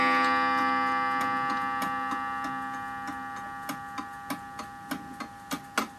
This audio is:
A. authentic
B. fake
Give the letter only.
A